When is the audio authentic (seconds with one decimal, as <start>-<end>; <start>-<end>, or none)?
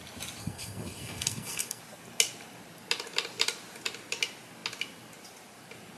0.0-0.4; 1.8-6.0